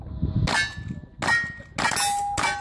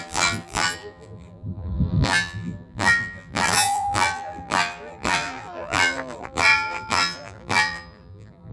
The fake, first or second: second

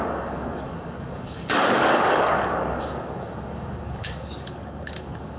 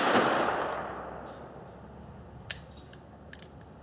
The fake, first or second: first